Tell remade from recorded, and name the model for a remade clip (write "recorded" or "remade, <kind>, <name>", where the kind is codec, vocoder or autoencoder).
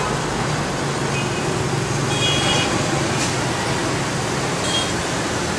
recorded